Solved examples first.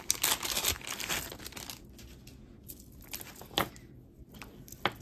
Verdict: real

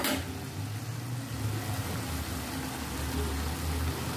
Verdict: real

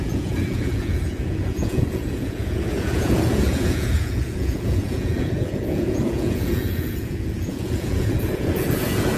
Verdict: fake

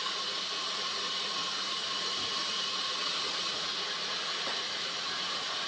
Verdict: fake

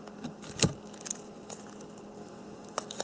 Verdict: real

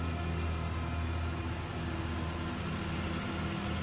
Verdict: real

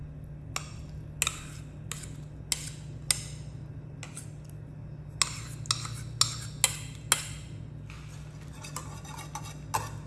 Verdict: real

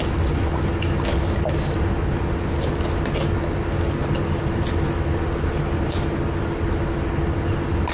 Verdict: real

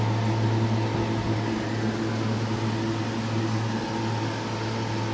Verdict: real